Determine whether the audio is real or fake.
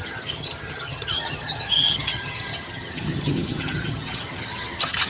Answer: fake